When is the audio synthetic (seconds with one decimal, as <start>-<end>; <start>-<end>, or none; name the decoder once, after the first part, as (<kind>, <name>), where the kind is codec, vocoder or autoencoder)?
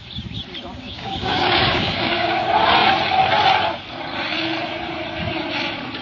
0.7-2.4 (codec, DAC)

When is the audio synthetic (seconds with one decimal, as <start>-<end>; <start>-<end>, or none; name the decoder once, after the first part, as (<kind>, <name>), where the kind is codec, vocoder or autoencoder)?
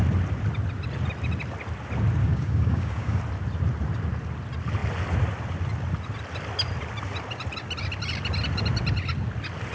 2.2-3.2 (codec, DAC)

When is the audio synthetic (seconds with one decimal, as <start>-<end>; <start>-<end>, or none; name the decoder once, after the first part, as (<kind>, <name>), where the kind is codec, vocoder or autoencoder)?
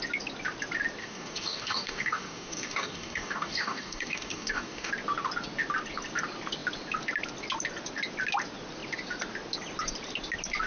1.0-4.9 (codec, DAC)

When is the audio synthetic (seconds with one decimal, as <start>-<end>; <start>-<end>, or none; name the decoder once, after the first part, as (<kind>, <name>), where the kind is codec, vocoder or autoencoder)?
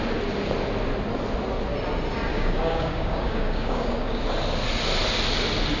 2.3-4.2 (codec, DAC)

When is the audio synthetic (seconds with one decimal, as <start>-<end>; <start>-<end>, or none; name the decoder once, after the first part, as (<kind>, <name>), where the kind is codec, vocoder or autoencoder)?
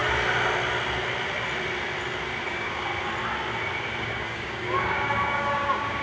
2.5-2.9 (codec, DAC); 4.0-6.0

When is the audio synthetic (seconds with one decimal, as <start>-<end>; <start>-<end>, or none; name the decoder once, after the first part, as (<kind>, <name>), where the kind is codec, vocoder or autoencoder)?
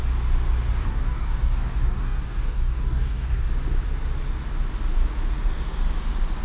0.8-3.5 (codec, DAC)